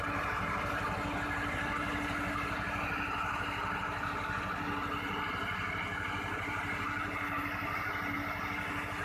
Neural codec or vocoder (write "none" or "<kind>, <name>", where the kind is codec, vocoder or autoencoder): none